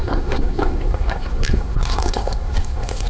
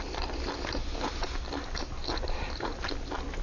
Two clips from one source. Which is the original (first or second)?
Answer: second